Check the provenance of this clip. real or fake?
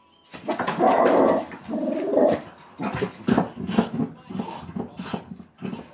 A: real